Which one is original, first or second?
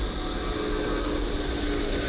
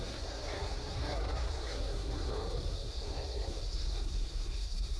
first